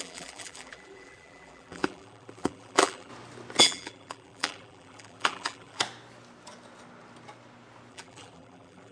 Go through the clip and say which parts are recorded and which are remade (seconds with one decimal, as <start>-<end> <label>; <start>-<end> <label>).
0.0-3.1 remade; 3.1-3.6 recorded; 3.6-5.8 remade; 5.8-7.9 recorded; 7.9-8.9 remade